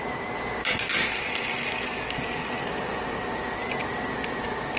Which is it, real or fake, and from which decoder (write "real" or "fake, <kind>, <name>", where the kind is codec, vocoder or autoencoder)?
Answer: real